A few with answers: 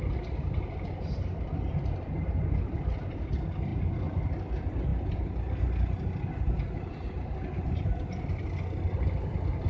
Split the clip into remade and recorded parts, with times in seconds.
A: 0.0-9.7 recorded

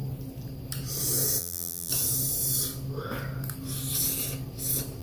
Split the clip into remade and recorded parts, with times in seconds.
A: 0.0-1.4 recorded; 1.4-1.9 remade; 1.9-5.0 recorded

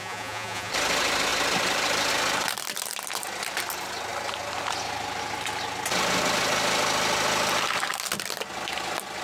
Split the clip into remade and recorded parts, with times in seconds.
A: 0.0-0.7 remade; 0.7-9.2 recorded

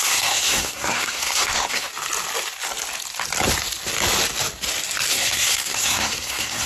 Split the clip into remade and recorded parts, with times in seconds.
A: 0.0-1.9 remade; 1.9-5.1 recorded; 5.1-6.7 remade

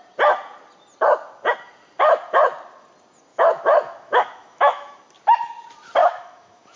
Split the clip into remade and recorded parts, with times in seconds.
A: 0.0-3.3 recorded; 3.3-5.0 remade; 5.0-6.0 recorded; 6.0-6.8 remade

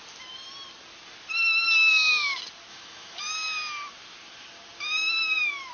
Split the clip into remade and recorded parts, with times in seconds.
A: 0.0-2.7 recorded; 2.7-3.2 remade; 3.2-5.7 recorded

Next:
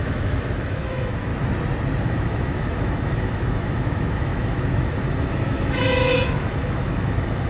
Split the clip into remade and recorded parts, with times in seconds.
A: 0.0-1.3 remade; 1.3-2.0 recorded; 2.0-7.5 remade